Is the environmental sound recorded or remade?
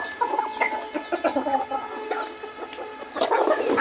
recorded